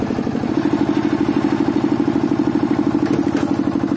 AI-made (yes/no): no